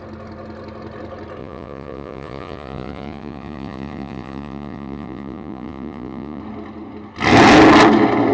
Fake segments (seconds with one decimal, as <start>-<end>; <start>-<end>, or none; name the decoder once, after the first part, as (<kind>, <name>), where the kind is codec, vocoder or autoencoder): 1.4-6.4 (vocoder, Vocos)